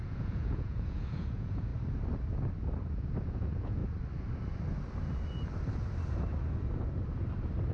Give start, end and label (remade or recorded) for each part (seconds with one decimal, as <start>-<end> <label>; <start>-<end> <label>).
0.0-1.7 remade; 1.7-2.9 recorded; 2.9-3.8 remade; 3.8-7.7 recorded